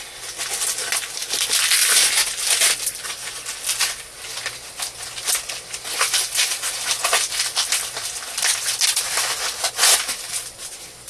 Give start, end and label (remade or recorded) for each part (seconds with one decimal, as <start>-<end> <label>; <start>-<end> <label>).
0.0-11.1 recorded